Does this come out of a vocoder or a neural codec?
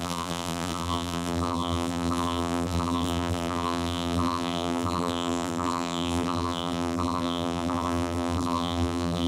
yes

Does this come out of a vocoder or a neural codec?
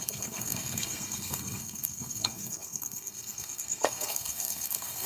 yes